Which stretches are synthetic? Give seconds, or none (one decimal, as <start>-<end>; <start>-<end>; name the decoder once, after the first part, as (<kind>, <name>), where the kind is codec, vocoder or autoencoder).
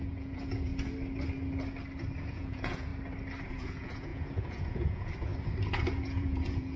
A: 0.0-0.7 (vocoder, Vocos); 2.2-2.9; 3.5-5.3; 5.9-6.8